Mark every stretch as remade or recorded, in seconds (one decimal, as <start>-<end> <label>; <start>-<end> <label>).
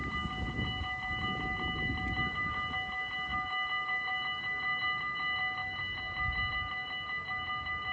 0.0-7.9 recorded